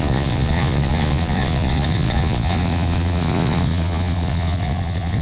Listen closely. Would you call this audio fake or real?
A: fake